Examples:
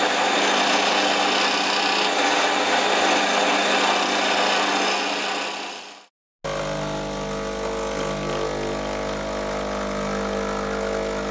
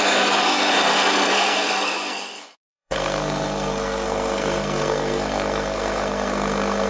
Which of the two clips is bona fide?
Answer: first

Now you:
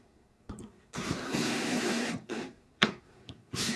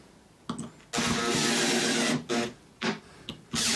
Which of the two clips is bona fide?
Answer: second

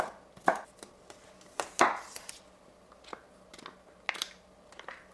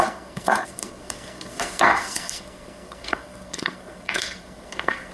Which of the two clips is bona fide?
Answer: first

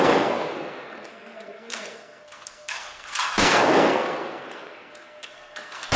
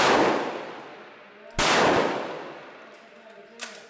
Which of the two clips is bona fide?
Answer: second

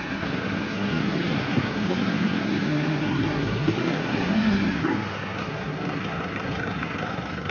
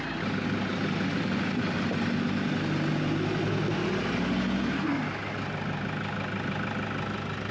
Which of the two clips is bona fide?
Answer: second